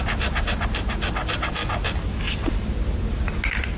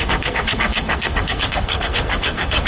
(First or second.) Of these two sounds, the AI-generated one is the second